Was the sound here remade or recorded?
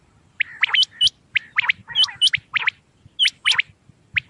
remade